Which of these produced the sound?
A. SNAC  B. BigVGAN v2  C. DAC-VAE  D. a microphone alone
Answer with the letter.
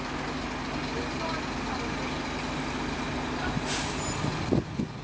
D